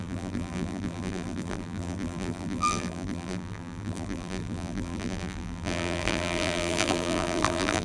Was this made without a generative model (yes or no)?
no